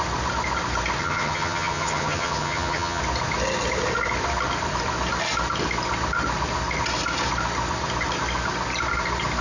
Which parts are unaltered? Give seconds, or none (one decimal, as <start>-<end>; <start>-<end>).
0.0-1.0; 3.0-9.4